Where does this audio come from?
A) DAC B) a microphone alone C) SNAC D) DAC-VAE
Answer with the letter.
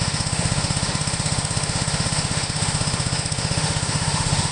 D